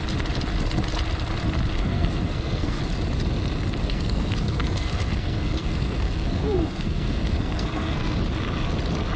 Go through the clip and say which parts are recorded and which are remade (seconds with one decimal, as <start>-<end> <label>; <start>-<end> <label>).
0.0-1.7 recorded; 1.7-2.8 remade; 2.8-3.8 recorded; 3.8-8.2 remade; 8.2-9.2 recorded